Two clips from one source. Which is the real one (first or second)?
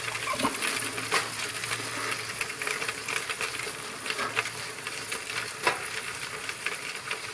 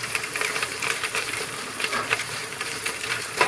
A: first